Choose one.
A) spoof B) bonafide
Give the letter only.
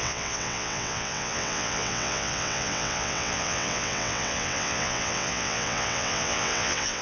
A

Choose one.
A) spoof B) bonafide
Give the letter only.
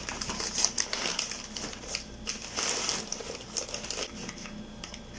B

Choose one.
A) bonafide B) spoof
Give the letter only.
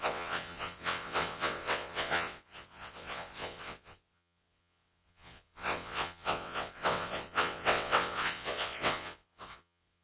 B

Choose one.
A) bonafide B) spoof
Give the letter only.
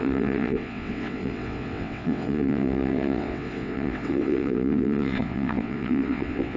B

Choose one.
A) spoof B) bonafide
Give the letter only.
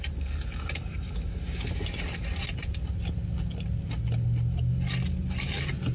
B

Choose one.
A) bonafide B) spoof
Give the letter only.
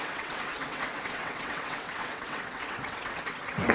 B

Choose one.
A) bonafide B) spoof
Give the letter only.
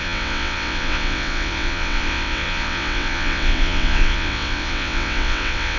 B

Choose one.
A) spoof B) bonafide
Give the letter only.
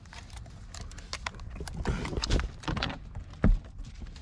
B